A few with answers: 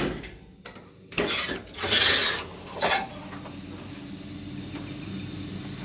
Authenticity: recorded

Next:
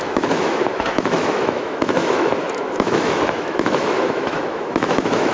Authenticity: remade